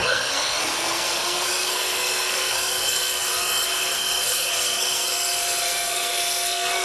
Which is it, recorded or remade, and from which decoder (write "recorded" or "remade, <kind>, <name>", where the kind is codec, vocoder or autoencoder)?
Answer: remade, codec, SNAC